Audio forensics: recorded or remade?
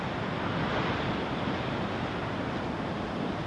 recorded